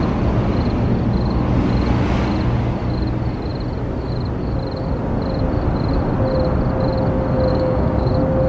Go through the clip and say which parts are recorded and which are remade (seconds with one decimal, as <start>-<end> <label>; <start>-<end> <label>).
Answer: 0.0-7.5 recorded; 7.5-8.1 remade; 8.1-8.5 recorded